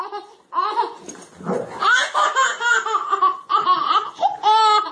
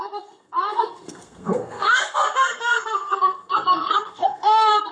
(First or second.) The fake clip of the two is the second